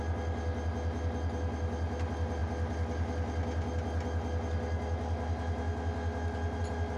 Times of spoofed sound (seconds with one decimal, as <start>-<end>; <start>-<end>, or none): none